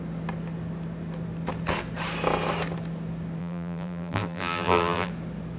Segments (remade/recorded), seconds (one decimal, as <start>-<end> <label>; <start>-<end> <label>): 0.0-3.4 recorded; 3.4-5.1 remade; 5.1-5.6 recorded